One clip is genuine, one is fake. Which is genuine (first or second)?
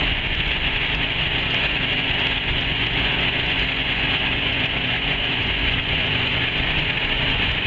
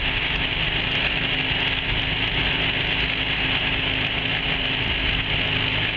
second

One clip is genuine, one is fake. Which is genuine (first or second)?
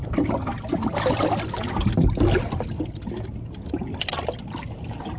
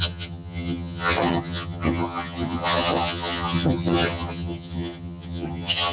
first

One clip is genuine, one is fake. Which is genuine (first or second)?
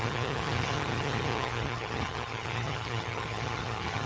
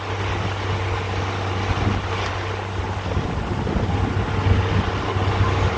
second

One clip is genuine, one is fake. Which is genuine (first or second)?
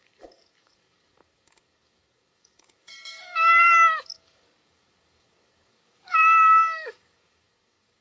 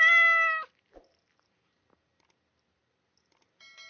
second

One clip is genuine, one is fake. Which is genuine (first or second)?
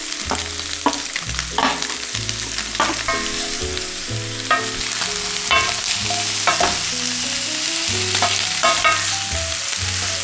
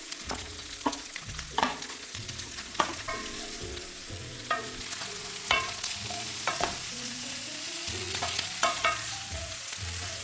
first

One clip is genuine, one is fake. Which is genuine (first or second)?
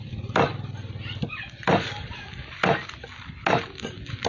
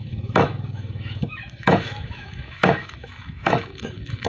first